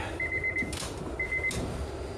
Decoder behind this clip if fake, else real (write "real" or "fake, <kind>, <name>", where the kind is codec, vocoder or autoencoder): real